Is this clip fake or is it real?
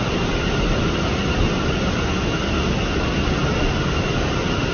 real